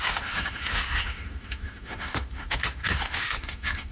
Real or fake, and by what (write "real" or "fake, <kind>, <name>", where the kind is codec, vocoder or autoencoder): fake, autoencoder, DAC-VAE